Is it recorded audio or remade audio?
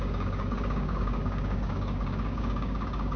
remade